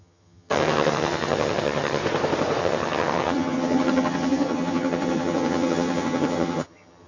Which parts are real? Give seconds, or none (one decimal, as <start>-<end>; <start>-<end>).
2.0-2.6